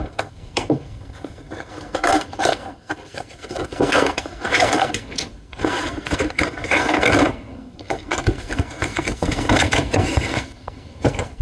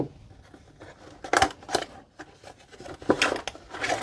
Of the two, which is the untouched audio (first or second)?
second